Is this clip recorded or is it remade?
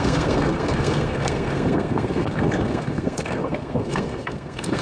remade